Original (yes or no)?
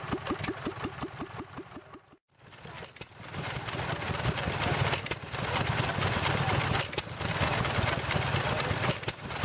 yes